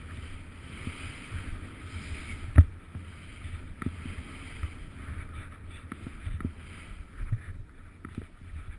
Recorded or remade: recorded